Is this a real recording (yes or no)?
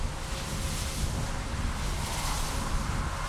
yes